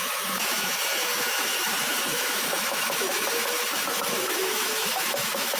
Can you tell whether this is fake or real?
fake